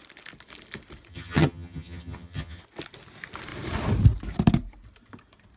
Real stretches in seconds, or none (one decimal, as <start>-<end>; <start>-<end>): 0.0-1.1; 2.6-5.6

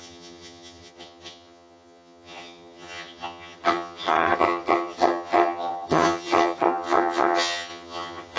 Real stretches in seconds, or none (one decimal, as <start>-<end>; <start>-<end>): none